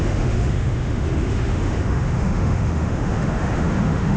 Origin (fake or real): fake